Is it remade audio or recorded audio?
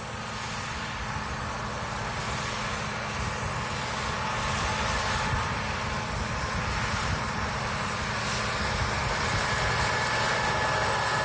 recorded